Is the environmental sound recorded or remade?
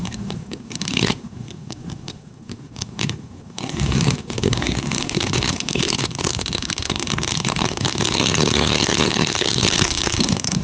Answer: remade